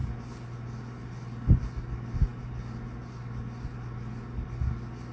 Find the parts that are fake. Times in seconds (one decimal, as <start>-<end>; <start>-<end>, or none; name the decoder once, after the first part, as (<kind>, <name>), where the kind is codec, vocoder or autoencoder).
none